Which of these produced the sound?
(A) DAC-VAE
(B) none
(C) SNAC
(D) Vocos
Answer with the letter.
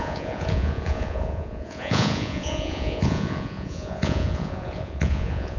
D